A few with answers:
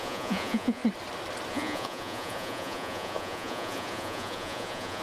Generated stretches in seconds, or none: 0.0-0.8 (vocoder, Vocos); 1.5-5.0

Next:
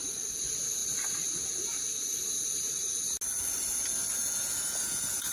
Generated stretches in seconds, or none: 4.2-5.3 (vocoder, Vocos)

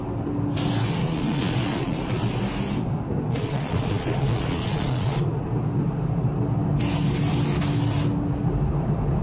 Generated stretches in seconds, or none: 1.0-2.3 (vocoder, Vocos); 3.3-5.2